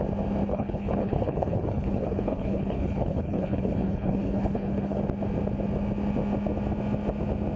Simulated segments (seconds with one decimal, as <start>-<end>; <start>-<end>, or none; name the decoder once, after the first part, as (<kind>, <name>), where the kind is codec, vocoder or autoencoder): 0.5-5.0 (codec, HILCodec)